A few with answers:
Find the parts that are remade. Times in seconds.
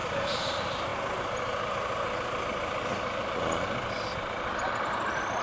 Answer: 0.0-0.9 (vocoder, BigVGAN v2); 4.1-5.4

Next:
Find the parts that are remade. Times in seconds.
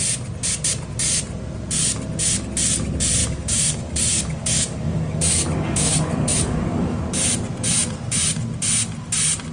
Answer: 3.2-7.0 (codec, DAC)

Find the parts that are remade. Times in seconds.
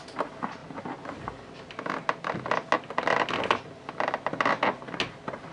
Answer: none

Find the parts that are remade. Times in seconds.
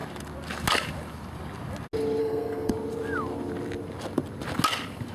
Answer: 2.2-2.7 (codec, SNAC)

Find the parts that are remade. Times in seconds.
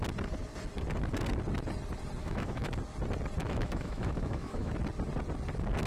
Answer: 2.2-2.7 (autoencoder, DAC-VAE); 3.4-4.7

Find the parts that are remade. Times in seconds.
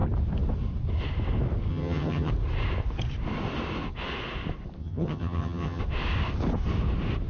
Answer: 1.7-2.3 (vocoder, HiFi-GAN); 4.8-5.8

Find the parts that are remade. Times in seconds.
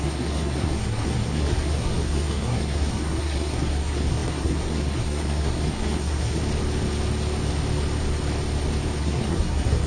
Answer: 0.0-6.4 (codec, SNAC); 9.0-9.9